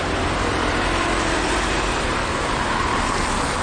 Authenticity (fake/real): fake